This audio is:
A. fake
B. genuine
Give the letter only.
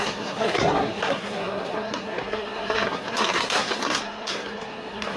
A